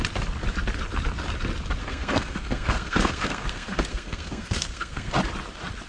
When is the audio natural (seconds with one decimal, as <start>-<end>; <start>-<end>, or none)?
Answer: 0.0-1.8; 5.1-5.9